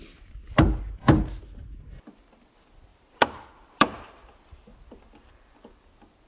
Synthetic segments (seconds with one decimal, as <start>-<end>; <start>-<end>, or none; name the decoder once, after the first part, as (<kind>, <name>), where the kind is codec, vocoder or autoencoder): 2.9-5.3 (vocoder, BigVGAN v2)